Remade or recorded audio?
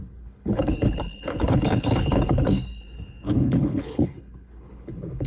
remade